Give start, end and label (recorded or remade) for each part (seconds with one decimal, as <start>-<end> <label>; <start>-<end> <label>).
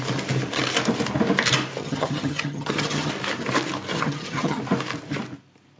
0.0-1.8 recorded; 1.8-3.1 remade; 3.1-3.9 recorded; 3.9-4.6 remade; 4.6-5.8 recorded